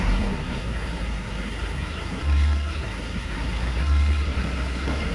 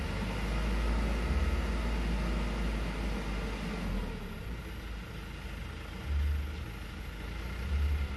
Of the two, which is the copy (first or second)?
first